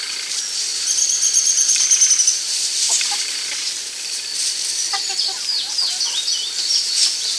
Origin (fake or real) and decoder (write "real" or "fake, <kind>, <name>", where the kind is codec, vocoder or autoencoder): real